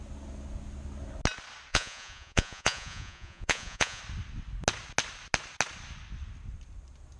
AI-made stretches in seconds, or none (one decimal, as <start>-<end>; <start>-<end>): 1.7-4.0